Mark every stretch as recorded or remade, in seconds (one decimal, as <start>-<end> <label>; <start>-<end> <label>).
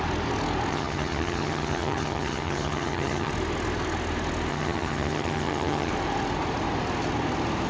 0.0-0.7 recorded; 0.7-3.3 remade; 3.3-4.5 recorded; 4.5-5.9 remade; 5.9-7.7 recorded